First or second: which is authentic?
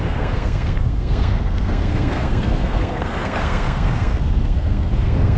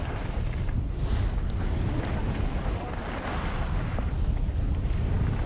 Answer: second